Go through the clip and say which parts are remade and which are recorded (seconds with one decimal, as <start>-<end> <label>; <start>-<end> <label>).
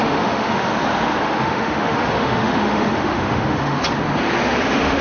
0.0-0.7 remade; 0.7-1.2 recorded; 1.2-3.8 remade; 3.8-4.6 recorded; 4.6-5.0 remade